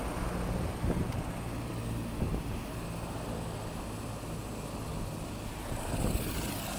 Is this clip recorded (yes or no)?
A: yes